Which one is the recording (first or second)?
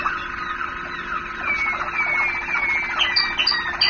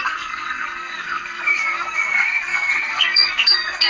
first